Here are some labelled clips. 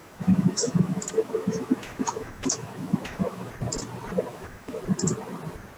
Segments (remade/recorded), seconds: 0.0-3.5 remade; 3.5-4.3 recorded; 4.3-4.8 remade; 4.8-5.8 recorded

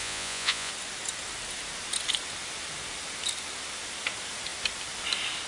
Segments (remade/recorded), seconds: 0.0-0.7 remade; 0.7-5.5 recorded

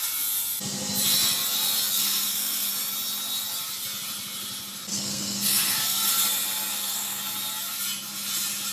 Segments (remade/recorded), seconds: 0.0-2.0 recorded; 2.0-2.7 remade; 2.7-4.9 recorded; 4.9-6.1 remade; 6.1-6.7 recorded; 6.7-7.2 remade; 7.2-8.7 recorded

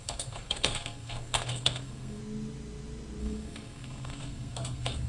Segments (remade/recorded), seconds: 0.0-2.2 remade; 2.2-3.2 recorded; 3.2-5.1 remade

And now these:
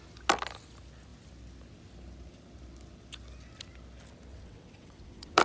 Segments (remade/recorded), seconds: 0.0-4.3 recorded; 4.3-5.4 remade

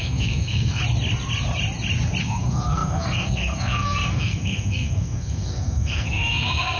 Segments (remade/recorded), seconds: 0.0-0.8 remade; 0.8-2.2 recorded; 2.2-6.8 remade